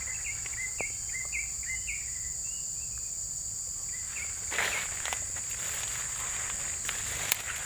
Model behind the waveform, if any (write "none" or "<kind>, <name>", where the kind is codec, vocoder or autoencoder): none